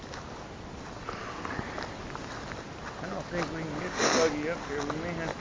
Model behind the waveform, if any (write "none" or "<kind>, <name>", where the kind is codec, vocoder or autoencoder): none